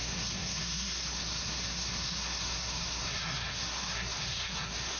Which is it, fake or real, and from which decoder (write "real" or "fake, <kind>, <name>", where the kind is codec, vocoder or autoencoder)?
fake, codec, SNAC